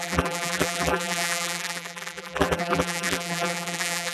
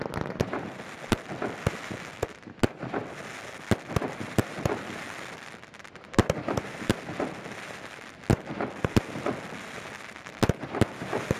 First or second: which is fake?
first